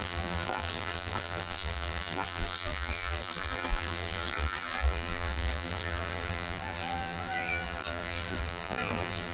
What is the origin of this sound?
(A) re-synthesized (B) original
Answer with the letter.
A